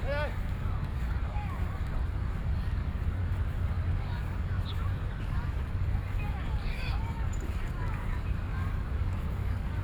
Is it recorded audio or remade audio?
remade